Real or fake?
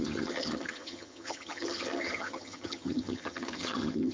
fake